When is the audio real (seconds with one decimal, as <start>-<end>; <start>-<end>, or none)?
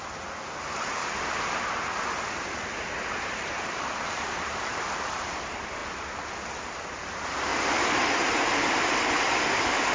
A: 0.0-9.9